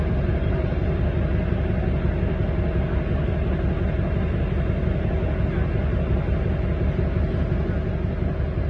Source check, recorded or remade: recorded